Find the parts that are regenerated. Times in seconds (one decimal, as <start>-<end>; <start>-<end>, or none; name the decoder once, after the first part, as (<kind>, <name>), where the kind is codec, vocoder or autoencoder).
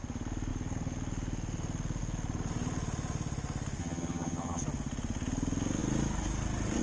3.8-4.6 (vocoder, HiFi-GAN)